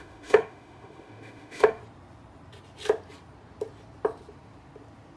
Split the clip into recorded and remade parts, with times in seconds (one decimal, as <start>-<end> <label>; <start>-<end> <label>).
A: 0.0-1.8 remade; 1.8-5.2 recorded